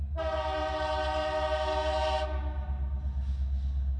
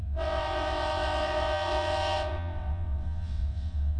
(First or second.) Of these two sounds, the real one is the first